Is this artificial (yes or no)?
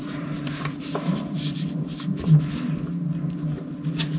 no